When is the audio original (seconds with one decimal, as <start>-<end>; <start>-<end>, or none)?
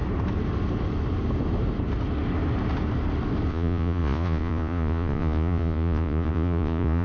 0.0-3.5